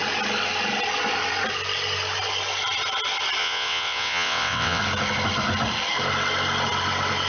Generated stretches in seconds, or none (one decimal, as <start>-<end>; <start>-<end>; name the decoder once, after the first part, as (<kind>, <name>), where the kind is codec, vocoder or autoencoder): 3.4-4.8 (vocoder, WaveNeXt)